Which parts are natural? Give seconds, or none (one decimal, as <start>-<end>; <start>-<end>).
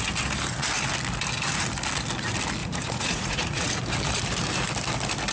0.0-2.6; 3.8-5.3